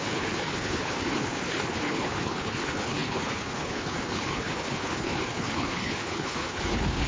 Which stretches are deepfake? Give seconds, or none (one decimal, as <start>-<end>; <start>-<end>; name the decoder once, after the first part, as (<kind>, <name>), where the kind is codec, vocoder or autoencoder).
0.0-7.1 (codec, HILCodec)